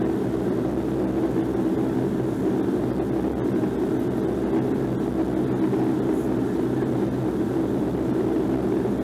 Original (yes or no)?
yes